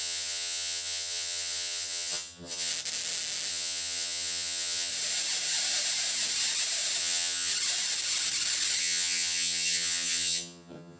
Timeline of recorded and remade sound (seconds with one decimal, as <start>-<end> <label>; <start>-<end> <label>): 0.0-2.7 remade; 2.7-3.5 recorded; 3.5-4.9 remade; 4.9-7.0 recorded; 7.0-7.5 remade; 7.5-8.8 recorded; 8.8-11.0 remade